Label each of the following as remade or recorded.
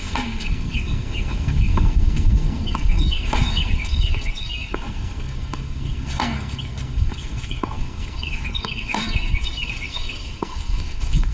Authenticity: remade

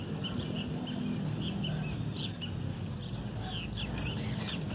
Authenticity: recorded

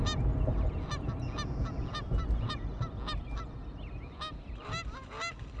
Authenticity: recorded